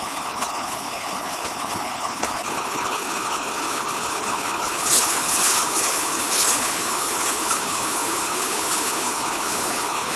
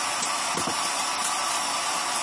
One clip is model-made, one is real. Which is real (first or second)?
second